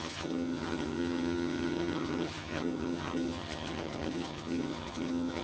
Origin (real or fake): fake